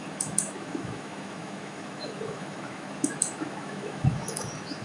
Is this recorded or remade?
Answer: remade